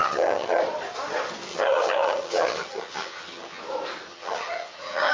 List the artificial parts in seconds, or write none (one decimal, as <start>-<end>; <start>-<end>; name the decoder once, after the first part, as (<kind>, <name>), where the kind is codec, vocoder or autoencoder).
0.0-0.6 (vocoder, HiFi-GAN); 1.5-3.6; 4.1-5.1